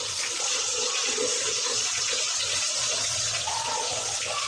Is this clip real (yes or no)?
no